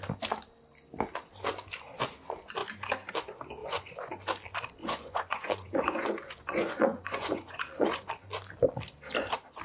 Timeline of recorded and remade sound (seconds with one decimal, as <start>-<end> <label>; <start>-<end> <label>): 0.0-3.6 recorded; 3.6-4.1 remade; 4.1-4.8 recorded; 4.8-8.1 remade; 8.1-9.6 recorded